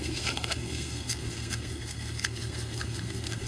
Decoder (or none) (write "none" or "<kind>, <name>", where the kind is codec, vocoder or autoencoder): codec, SNAC